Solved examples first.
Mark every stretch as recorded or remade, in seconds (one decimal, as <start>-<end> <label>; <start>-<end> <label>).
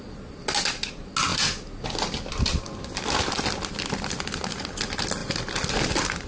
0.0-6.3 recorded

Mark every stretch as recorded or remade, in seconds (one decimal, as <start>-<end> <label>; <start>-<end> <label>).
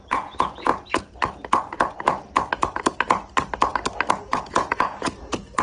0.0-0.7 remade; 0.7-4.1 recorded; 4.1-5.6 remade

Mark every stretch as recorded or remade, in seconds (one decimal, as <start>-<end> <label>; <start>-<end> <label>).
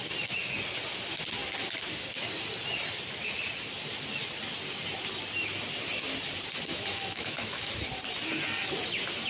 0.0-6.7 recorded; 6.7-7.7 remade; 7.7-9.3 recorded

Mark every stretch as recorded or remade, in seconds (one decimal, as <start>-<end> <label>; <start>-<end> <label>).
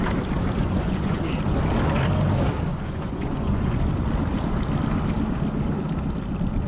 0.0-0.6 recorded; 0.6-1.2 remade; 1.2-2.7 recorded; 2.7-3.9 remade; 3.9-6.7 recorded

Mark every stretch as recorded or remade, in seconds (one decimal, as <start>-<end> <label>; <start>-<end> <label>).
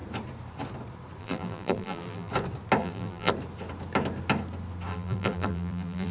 0.0-1.2 recorded; 1.2-2.3 remade; 2.3-2.8 recorded; 2.8-3.3 remade; 3.3-4.9 recorded; 4.9-6.1 remade